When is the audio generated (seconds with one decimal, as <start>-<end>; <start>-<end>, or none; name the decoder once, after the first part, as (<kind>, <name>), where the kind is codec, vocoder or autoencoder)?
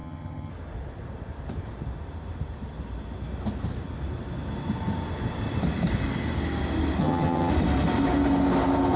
0.0-0.5 (vocoder, HiFi-GAN); 7.0-7.5